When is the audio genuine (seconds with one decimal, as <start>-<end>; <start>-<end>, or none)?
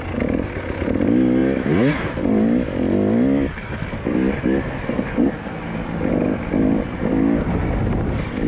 0.0-8.5